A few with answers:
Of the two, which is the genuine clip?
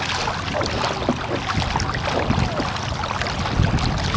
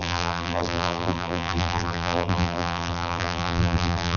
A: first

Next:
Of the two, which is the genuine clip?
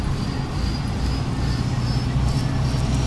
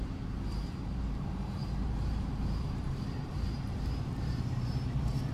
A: first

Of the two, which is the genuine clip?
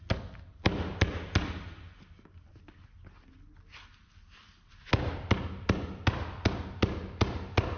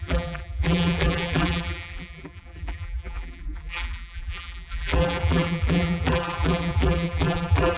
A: first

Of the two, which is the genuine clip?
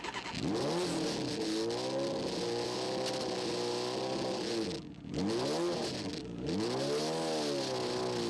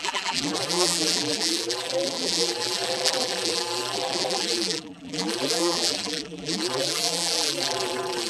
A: first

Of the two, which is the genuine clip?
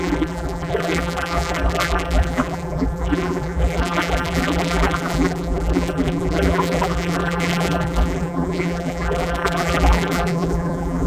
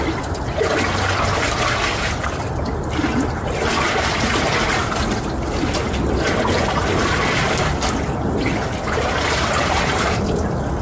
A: second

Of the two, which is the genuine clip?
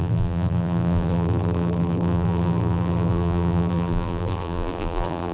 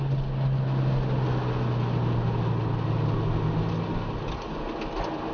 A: second